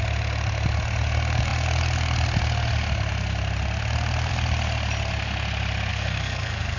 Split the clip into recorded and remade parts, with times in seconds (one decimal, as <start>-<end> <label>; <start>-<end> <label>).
0.0-5.9 recorded; 5.9-6.8 remade